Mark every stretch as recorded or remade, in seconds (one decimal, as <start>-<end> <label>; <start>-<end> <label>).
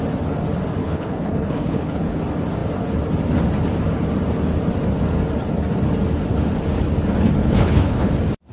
0.0-0.8 recorded; 0.8-2.2 remade; 2.2-7.4 recorded; 7.4-8.1 remade; 8.1-8.5 recorded